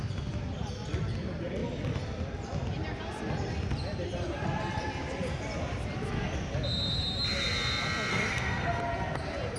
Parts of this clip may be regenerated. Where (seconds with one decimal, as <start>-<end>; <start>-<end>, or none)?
8.1-8.8